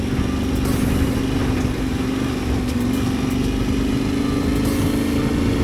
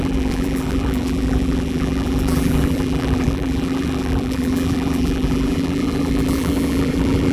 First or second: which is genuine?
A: first